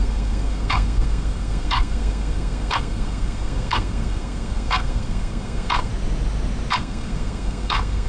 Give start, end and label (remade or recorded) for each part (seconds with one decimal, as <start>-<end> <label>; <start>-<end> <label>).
0.0-5.9 remade; 5.9-6.8 recorded; 6.8-8.1 remade